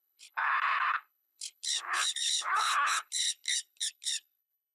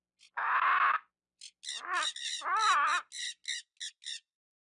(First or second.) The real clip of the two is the second